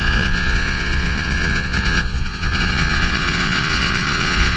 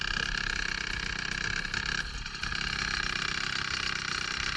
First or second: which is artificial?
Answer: first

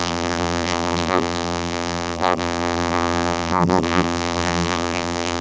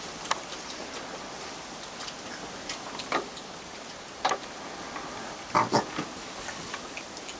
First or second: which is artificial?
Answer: first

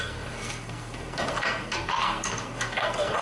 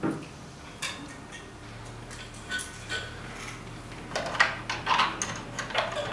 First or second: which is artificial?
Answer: first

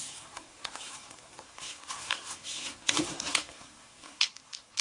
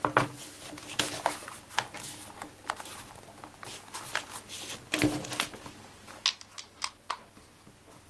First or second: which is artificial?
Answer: first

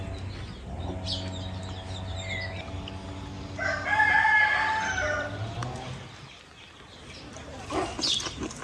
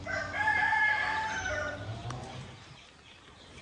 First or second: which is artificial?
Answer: second